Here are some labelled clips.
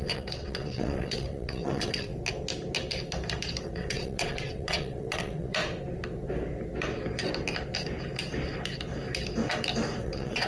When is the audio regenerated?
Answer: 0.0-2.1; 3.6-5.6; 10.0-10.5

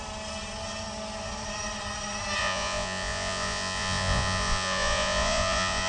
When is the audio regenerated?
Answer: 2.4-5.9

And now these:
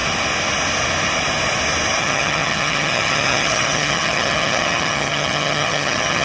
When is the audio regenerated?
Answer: 2.0-6.2